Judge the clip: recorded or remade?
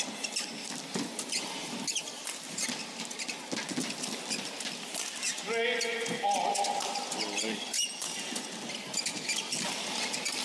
recorded